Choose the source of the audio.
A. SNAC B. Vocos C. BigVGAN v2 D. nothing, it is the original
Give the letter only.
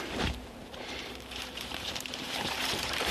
C